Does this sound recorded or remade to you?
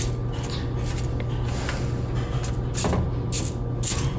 recorded